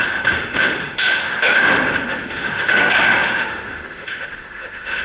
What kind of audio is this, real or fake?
fake